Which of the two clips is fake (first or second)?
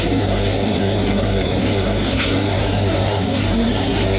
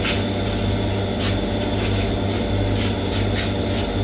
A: first